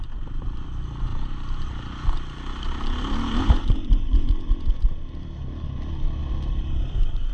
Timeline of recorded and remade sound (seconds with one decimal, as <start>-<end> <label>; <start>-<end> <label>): 0.0-6.2 recorded; 6.2-7.3 remade